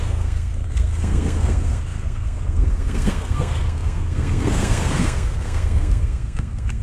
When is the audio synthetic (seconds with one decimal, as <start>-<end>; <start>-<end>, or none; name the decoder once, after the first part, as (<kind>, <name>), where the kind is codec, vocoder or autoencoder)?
0.0-6.8 (codec, SNAC)